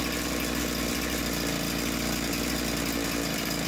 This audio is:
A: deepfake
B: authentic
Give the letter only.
B